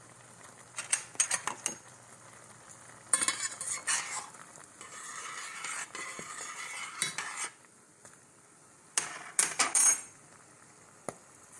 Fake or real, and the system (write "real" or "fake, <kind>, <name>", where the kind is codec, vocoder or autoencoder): real